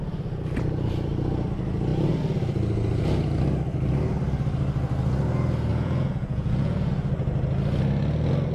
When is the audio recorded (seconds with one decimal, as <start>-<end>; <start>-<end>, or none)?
0.0-5.7; 6.9-8.5